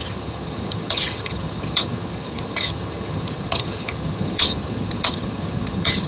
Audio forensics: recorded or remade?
remade